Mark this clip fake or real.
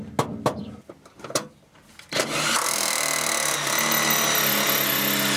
real